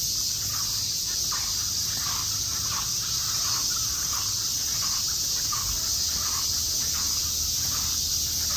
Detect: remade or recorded recorded